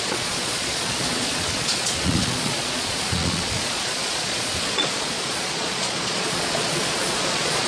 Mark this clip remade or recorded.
remade